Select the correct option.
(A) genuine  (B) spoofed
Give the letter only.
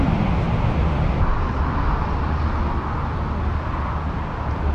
A